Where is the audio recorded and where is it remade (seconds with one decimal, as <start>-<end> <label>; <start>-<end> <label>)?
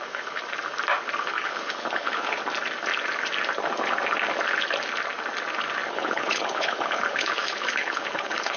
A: 0.0-0.4 remade; 0.4-1.2 recorded; 1.2-2.4 remade; 2.4-5.9 recorded; 5.9-8.6 remade